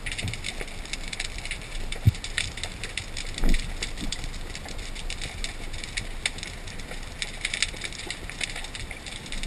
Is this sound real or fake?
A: real